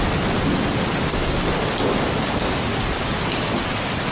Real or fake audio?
real